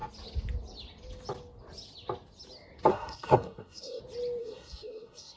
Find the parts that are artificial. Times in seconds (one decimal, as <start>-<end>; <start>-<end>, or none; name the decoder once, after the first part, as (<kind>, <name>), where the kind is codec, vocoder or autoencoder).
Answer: 2.9-4.0 (codec, SNAC); 4.4-5.4